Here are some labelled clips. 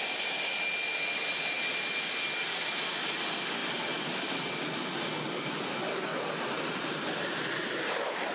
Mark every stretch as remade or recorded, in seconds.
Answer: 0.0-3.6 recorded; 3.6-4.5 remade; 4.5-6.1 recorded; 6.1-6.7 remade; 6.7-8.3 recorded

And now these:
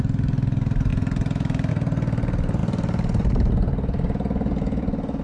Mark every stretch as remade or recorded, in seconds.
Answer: 0.0-2.6 recorded; 2.6-3.5 remade; 3.5-5.2 recorded